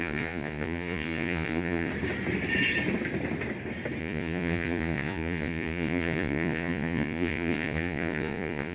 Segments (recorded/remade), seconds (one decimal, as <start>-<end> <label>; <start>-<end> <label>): 0.0-1.9 remade; 1.9-4.0 recorded; 4.0-8.7 remade